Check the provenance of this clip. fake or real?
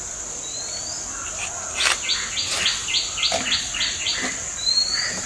real